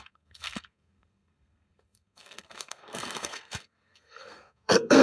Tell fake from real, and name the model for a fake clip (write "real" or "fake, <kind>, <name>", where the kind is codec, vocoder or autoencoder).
fake, codec, SNAC